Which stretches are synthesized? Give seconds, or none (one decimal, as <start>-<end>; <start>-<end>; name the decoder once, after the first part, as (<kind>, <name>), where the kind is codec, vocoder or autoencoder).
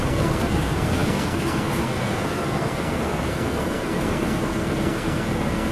0.0-5.7 (codec, SNAC)